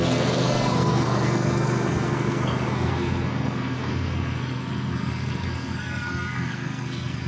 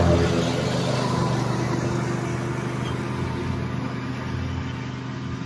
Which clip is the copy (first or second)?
first